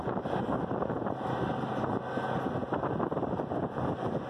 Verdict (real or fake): real